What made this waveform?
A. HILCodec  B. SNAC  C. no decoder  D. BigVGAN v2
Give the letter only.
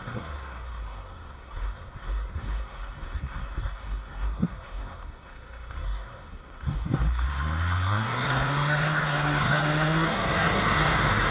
B